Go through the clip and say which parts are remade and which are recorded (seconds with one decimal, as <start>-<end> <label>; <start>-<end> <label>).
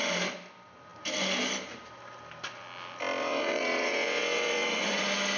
0.0-3.2 recorded; 3.2-5.0 remade; 5.0-5.4 recorded